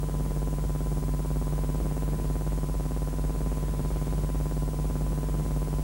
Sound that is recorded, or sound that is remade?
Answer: recorded